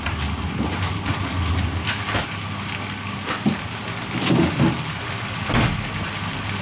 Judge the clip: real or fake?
real